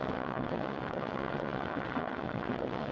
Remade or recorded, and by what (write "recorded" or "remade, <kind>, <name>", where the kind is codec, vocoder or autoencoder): remade, vocoder, WaveNeXt